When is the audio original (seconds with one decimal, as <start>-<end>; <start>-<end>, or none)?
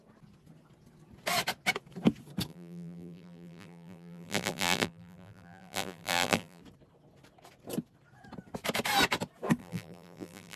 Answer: 0.0-2.5; 6.6-9.6